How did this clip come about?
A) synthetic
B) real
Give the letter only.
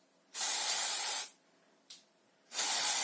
B